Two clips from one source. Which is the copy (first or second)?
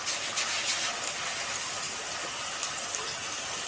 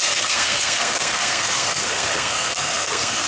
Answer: second